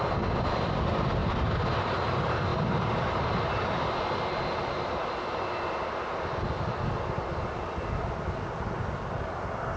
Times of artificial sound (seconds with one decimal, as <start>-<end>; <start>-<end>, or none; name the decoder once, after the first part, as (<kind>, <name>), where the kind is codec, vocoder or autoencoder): 1.2-2.0 (vocoder, BigVGAN v2)